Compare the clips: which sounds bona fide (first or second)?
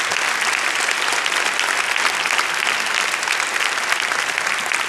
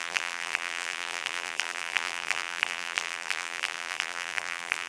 first